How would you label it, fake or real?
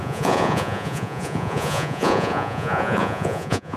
fake